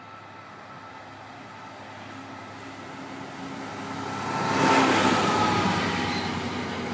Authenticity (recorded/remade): recorded